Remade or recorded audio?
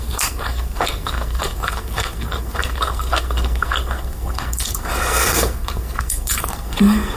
remade